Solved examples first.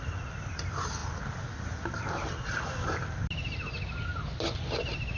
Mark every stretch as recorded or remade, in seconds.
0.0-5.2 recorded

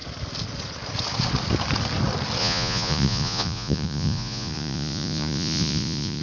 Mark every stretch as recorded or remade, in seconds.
0.0-2.4 recorded; 2.4-6.2 remade

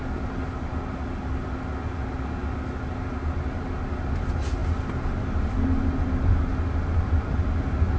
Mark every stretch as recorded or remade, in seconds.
0.0-8.0 recorded

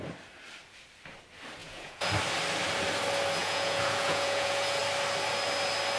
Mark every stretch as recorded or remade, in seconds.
0.0-1.6 recorded; 1.6-2.1 remade; 2.1-3.4 recorded; 3.4-4.8 remade; 4.8-6.0 recorded

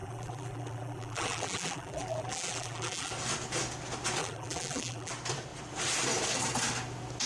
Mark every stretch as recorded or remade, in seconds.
0.0-3.1 remade; 3.1-4.2 recorded; 4.2-5.1 remade; 5.1-7.3 recorded

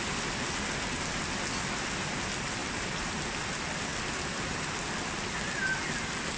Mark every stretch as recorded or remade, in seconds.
0.0-2.6 recorded; 2.6-3.4 remade; 3.4-6.4 recorded

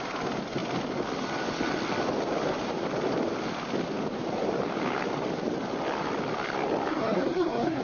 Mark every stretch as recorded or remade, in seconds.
0.0-6.9 recorded; 6.9-7.8 remade